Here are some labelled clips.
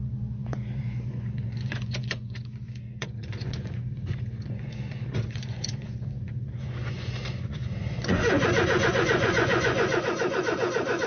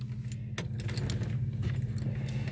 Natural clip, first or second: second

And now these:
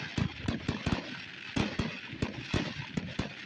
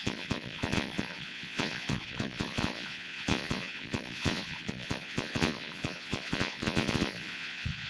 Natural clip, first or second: first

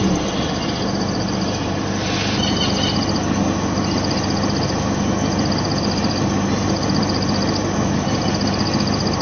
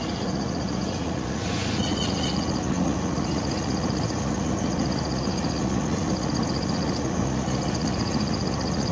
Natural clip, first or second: first